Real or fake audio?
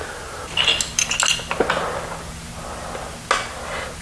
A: real